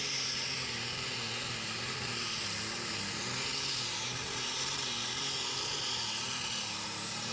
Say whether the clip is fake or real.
real